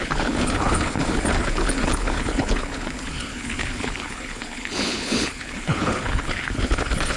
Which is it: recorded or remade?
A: remade